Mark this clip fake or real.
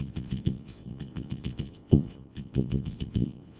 fake